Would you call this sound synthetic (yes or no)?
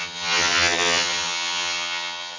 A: yes